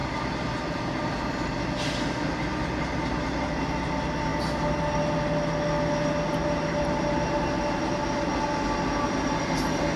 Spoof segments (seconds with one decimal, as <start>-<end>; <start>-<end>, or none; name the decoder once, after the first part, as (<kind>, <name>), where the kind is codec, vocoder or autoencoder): none